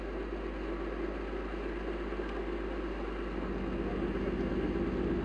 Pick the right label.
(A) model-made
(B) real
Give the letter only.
B